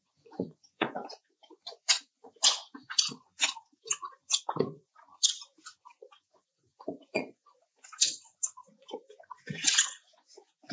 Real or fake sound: fake